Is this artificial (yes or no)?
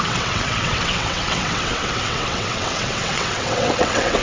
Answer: yes